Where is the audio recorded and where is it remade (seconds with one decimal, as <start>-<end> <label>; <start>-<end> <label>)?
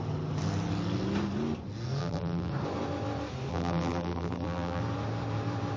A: 0.0-2.0 recorded; 2.0-2.5 remade; 2.5-3.5 recorded; 3.5-4.8 remade; 4.8-5.8 recorded